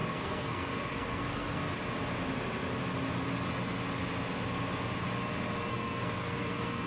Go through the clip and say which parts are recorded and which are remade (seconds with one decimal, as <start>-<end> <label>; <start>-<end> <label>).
0.0-1.6 remade; 1.6-5.7 recorded; 5.7-6.9 remade